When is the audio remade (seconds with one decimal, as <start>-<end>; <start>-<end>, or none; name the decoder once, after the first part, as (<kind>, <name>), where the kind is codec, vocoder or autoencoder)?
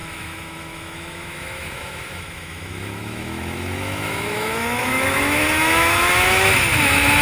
0.0-7.2 (autoencoder, DAC-VAE)